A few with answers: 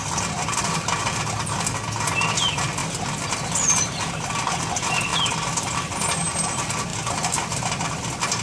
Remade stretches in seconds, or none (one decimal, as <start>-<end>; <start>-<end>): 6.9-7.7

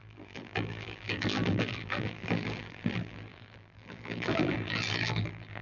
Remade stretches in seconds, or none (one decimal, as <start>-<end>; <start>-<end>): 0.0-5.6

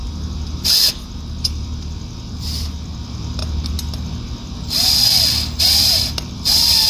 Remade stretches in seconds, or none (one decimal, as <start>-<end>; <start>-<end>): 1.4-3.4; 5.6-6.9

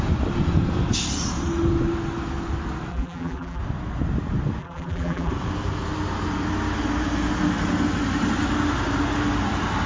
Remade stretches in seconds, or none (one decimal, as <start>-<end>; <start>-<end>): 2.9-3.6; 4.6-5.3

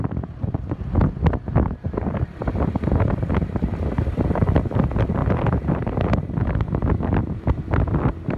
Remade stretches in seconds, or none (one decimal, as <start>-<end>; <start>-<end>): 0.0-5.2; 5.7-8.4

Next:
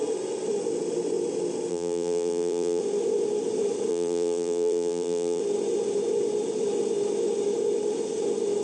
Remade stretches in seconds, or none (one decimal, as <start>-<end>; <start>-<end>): 1.7-2.8; 3.9-5.4